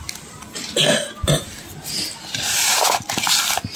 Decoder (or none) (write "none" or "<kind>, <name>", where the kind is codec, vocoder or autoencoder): none